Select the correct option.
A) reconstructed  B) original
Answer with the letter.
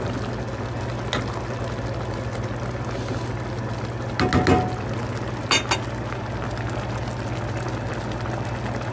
B